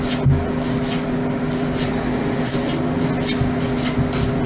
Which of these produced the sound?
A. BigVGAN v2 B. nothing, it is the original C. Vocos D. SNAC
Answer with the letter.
B